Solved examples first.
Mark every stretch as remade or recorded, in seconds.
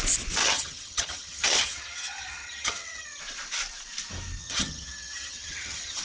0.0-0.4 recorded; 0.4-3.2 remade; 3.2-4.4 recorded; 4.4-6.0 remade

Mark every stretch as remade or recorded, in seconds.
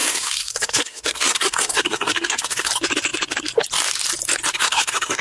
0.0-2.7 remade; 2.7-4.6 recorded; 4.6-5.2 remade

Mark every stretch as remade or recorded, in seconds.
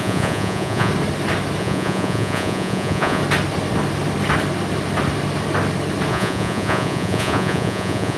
0.0-0.9 remade; 0.9-1.6 recorded; 1.6-3.2 remade; 3.2-6.1 recorded; 6.1-8.2 remade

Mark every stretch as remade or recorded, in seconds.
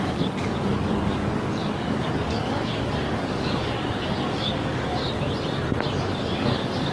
0.0-5.0 remade; 5.0-6.0 recorded; 6.0-6.9 remade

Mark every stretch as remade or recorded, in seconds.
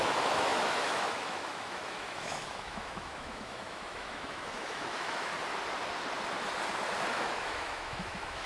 0.0-5.3 remade; 5.3-7.1 recorded; 7.1-8.5 remade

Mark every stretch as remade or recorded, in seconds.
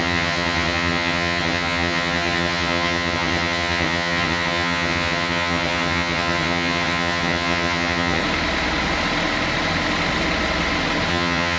0.0-8.2 remade; 8.2-11.1 recorded; 11.1-11.6 remade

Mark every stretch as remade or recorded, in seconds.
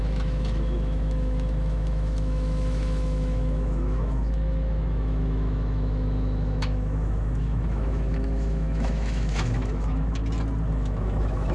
0.0-10.2 remade; 10.2-10.7 recorded; 10.7-11.5 remade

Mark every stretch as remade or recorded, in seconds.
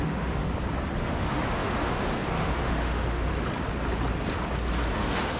0.0-0.4 remade; 0.4-1.0 recorded; 1.0-3.3 remade; 3.3-4.9 recorded; 4.9-5.4 remade